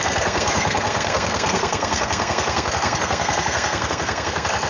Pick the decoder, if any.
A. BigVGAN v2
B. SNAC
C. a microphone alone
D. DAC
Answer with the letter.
B